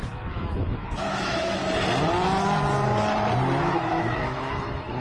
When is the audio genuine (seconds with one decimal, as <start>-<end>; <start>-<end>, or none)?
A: 1.6-3.6